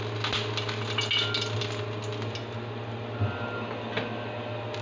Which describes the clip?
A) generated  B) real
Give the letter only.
B